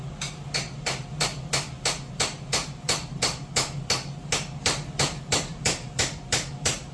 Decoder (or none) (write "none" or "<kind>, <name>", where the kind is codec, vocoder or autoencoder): none